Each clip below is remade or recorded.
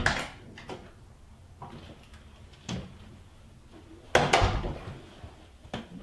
recorded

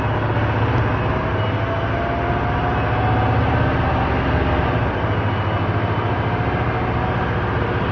recorded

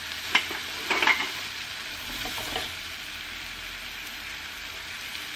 recorded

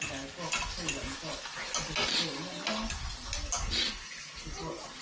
recorded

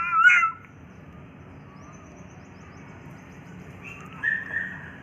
recorded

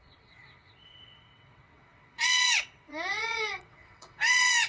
remade